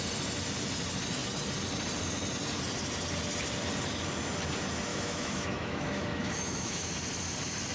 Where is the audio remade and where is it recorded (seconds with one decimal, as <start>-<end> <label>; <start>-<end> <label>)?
0.0-4.9 recorded; 4.9-6.9 remade; 6.9-7.7 recorded